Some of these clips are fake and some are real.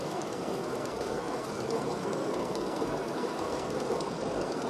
fake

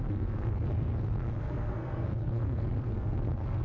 fake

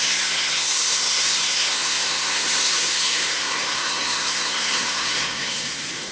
fake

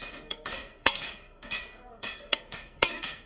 fake